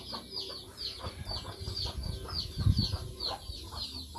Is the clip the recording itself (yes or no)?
yes